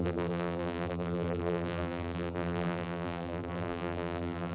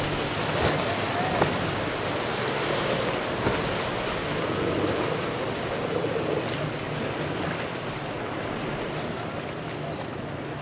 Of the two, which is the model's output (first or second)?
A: first